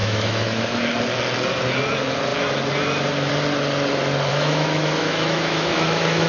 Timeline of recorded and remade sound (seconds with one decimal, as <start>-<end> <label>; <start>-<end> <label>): 0.0-0.6 remade; 0.6-4.3 recorded; 4.3-6.3 remade